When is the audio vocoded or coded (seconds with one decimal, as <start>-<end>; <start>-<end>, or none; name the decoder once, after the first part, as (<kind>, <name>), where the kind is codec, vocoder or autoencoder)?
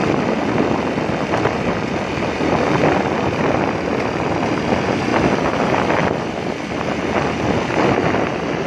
none